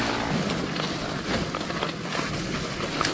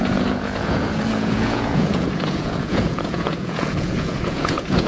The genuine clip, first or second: first